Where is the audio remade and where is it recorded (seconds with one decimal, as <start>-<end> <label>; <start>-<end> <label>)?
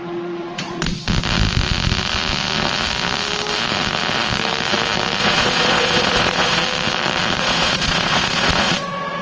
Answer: 0.0-0.9 remade; 0.9-5.2 recorded; 5.2-6.6 remade; 6.6-7.4 recorded; 7.4-9.2 remade